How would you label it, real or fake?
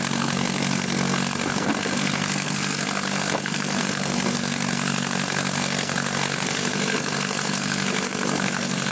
fake